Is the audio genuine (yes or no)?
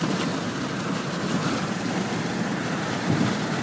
no